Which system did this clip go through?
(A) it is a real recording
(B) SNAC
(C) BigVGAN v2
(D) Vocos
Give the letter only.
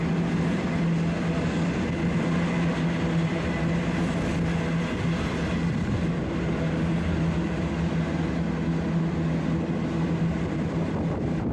A